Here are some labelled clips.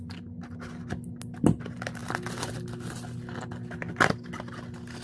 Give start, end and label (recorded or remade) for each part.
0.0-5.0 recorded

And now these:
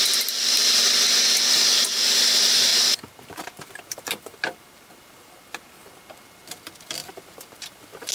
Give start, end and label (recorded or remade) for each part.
0.0-2.7 recorded; 2.7-5.8 remade; 5.8-7.0 recorded; 7.0-8.1 remade

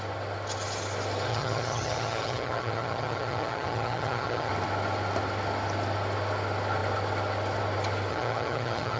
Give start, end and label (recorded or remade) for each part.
0.0-1.3 recorded; 1.3-4.5 remade; 4.5-8.1 recorded; 8.1-9.0 remade

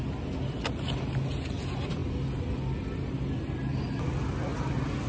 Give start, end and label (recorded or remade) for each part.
0.0-5.1 recorded